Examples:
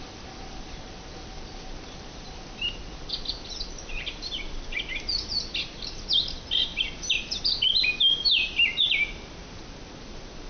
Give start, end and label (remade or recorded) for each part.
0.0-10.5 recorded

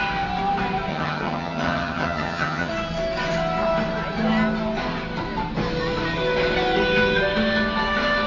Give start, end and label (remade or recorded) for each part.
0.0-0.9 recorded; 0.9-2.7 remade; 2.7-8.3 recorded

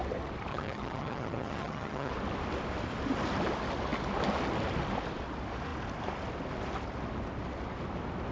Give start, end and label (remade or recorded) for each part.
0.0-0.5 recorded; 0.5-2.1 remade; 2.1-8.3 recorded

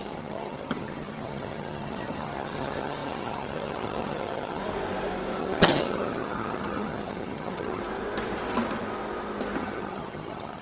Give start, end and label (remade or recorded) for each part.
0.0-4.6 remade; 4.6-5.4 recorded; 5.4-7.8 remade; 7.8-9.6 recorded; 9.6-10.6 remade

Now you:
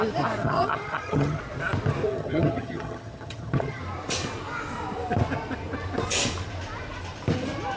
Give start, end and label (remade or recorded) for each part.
0.0-0.4 recorded; 0.4-1.4 remade; 1.4-2.1 recorded; 2.1-3.8 remade; 3.8-7.8 recorded

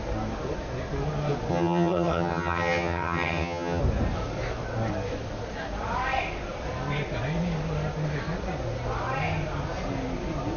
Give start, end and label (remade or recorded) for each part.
0.0-1.5 recorded; 1.5-3.8 remade; 3.8-10.6 recorded